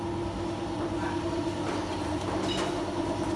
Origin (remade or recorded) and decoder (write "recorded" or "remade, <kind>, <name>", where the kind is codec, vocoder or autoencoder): recorded